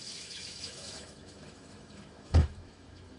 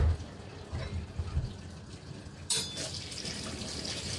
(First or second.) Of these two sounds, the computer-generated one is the first